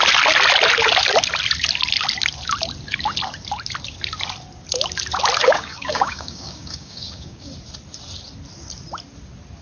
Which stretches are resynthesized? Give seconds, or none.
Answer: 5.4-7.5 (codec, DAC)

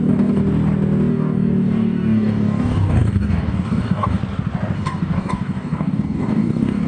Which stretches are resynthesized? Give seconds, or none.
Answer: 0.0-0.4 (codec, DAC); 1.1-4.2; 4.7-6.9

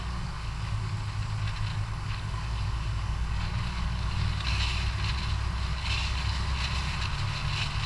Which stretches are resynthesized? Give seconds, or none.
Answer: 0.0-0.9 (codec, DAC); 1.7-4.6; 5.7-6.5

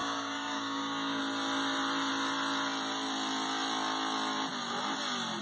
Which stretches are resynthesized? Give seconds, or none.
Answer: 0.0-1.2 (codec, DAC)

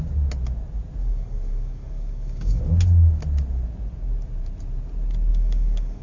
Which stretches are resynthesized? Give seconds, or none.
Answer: 1.0-2.6 (codec, DAC); 5.3-6.0

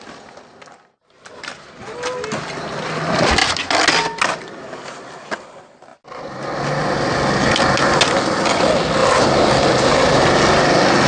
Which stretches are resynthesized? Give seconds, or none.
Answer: none

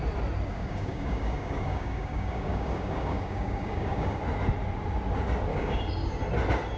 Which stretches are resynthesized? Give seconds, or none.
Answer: 0.5-4.2 (codec, DAC); 5.5-6.2

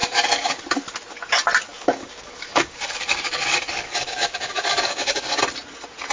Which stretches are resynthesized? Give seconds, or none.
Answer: 0.0-0.6 (codec, DAC); 1.7-5.4